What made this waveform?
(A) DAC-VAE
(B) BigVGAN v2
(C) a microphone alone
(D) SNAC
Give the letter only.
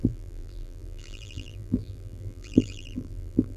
B